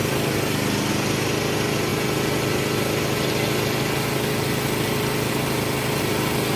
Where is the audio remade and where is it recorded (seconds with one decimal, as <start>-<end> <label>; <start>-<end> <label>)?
0.0-6.6 recorded

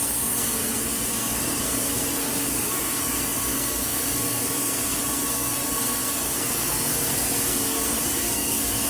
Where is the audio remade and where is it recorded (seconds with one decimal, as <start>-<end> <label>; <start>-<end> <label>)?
0.0-8.9 remade